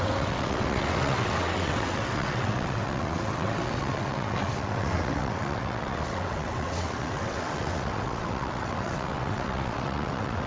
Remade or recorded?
remade